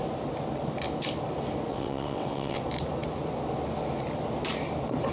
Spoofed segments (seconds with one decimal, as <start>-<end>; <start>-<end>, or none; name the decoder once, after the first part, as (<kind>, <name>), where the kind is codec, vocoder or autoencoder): 1.7-2.6 (vocoder, WaveNeXt)